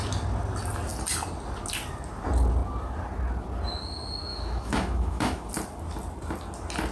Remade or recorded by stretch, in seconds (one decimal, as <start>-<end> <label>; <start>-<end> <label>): 0.0-4.3 recorded; 4.3-5.5 remade; 5.5-6.9 recorded